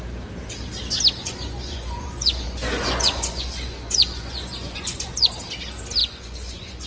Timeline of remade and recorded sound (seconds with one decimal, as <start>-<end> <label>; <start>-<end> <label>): 0.0-1.2 recorded; 1.2-5.3 remade; 5.3-6.0 recorded; 6.0-6.9 remade